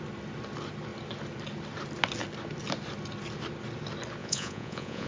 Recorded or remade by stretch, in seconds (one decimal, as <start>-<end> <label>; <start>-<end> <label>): 0.0-4.2 recorded; 4.2-5.1 remade